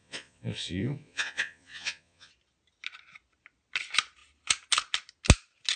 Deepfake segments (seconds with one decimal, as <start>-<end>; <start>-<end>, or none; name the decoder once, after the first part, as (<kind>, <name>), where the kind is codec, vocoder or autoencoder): 0.0-2.3 (vocoder, Vocos)